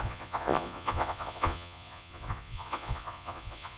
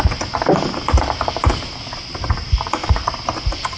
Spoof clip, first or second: first